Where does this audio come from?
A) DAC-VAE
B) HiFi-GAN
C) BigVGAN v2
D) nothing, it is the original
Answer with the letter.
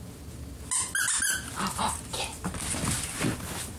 D